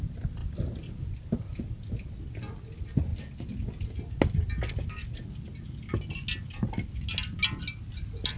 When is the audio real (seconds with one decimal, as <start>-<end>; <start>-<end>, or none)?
0.0-8.4